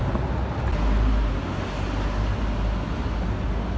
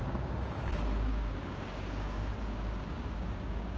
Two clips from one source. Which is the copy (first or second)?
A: second